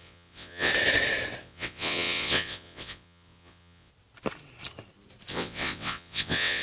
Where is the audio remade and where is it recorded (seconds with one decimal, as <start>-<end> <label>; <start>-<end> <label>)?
0.0-0.7 remade; 0.7-1.4 recorded; 1.4-3.9 remade; 3.9-5.3 recorded; 5.3-6.6 remade